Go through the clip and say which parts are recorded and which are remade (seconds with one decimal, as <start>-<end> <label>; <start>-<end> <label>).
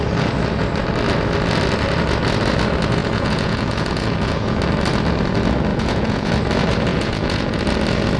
0.0-3.0 recorded; 3.0-4.6 remade; 4.6-5.7 recorded; 5.7-6.3 remade; 6.3-6.9 recorded; 6.9-7.6 remade; 7.6-8.2 recorded